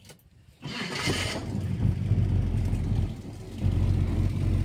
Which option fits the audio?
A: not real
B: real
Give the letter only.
B